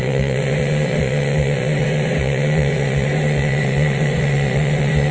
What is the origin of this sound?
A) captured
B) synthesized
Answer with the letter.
B